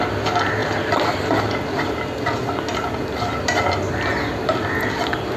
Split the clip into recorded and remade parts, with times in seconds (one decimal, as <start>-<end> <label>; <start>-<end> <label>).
0.0-5.4 recorded